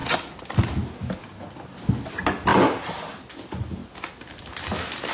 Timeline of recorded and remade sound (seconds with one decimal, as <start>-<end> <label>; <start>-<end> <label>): 0.0-5.1 recorded